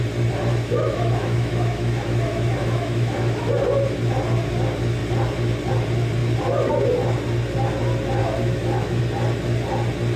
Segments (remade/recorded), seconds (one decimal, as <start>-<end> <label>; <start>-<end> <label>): 0.0-0.5 recorded; 0.5-3.5 remade; 3.5-8.2 recorded; 8.2-9.0 remade; 9.0-10.2 recorded